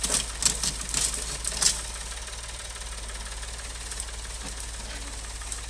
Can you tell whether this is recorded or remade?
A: recorded